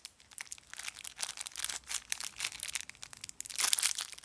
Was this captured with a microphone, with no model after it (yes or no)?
yes